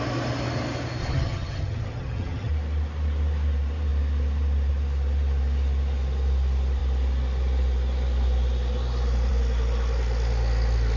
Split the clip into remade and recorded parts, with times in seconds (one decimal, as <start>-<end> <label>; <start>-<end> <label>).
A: 0.0-1.0 recorded; 1.0-2.5 remade; 2.5-11.0 recorded